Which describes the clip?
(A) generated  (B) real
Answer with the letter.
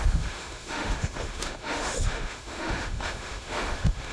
A